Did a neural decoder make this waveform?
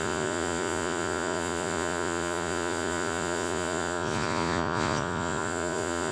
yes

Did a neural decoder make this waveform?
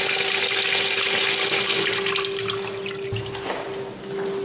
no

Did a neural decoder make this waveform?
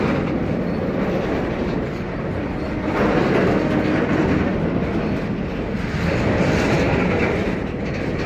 no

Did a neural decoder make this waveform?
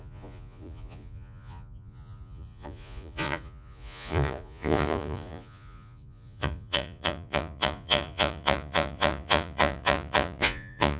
yes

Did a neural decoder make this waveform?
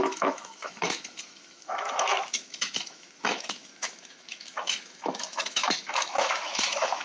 yes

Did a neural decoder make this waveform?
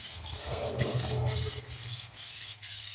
yes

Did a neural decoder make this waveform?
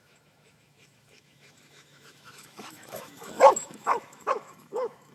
yes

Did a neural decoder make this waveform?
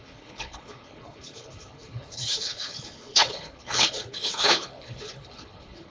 yes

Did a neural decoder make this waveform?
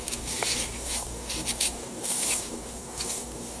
yes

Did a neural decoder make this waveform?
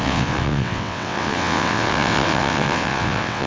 yes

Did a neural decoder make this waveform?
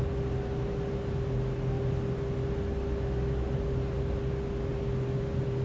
no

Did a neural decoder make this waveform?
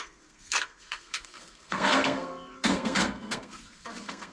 yes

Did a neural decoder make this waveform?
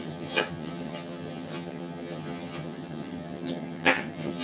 yes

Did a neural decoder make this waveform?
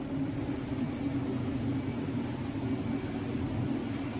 no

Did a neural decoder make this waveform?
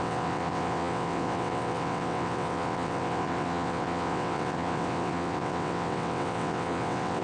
yes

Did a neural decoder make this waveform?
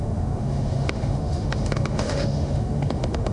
yes